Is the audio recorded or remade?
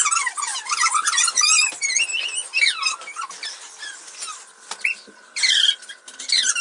recorded